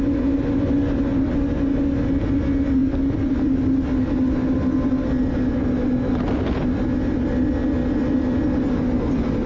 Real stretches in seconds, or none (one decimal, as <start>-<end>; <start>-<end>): 0.0-9.5